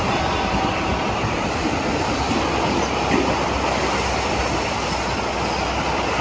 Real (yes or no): yes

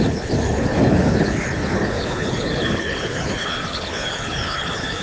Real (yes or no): no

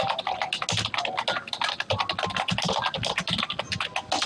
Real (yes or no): yes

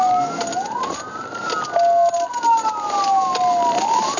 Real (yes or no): yes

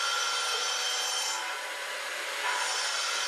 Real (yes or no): yes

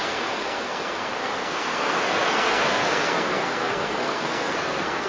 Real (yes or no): no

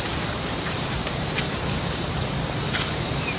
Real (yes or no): no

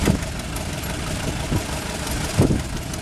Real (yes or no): yes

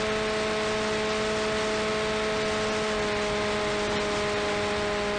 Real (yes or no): yes